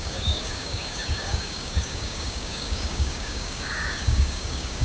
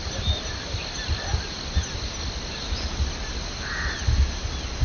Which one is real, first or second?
second